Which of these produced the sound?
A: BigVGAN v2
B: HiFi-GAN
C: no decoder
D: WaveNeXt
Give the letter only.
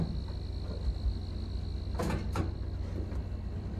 C